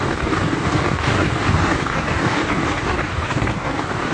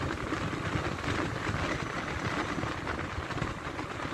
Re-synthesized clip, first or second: first